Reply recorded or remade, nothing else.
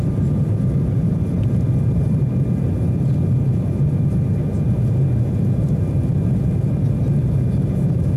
remade